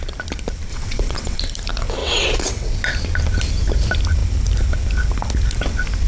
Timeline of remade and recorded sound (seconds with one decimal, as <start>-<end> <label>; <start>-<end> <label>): 0.0-0.7 recorded; 0.7-1.4 remade; 1.4-2.0 recorded; 2.0-2.7 remade; 2.7-6.1 recorded